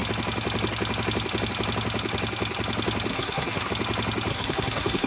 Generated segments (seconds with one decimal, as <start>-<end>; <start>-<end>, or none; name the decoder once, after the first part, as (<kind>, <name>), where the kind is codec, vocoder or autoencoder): 3.1-3.7 (codec, SNAC); 4.3-5.1